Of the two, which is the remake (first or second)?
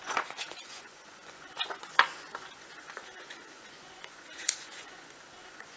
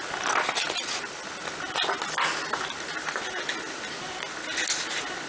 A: first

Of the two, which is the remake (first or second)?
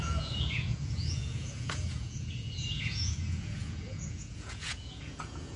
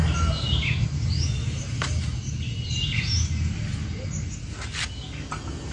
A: first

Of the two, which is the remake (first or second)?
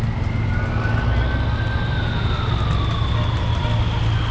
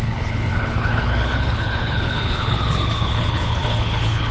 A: second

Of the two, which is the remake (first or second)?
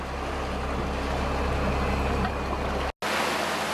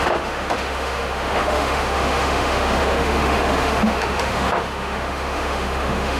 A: second